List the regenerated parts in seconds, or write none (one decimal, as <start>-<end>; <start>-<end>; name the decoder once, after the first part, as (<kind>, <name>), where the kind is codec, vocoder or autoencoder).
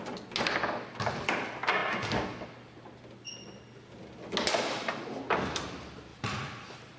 6.1-7.0 (vocoder, BigVGAN v2)